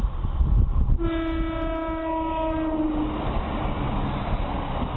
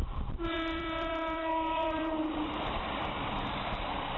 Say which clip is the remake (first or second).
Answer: second